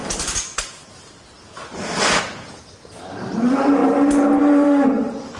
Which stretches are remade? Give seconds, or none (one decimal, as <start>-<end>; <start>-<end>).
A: 2.2-3.8; 4.4-5.4